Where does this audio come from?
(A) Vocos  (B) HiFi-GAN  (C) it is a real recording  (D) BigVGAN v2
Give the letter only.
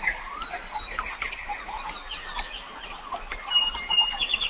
C